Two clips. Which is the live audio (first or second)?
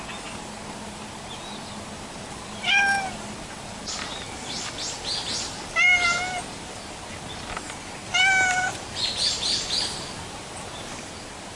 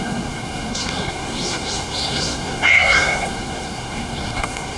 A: first